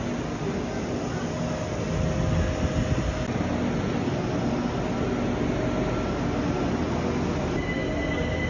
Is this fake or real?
real